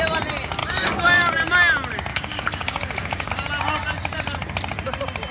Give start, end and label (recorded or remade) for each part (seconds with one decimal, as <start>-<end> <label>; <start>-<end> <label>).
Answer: 0.0-0.6 recorded; 0.6-1.3 remade; 1.3-2.1 recorded; 2.1-3.3 remade; 3.3-5.3 recorded